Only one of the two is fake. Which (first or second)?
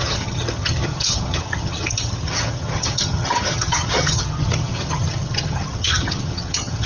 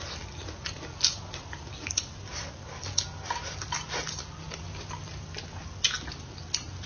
first